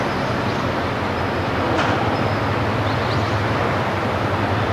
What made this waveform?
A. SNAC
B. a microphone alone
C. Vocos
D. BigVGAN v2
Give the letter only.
D